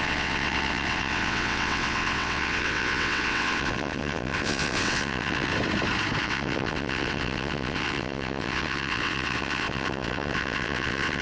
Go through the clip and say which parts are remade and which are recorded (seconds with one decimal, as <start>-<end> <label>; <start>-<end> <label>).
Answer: 0.0-5.5 remade; 5.5-6.2 recorded; 6.2-11.2 remade